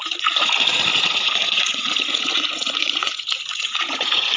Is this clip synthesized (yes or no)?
yes